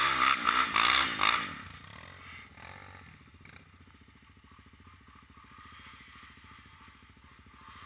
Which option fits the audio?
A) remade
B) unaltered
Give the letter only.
B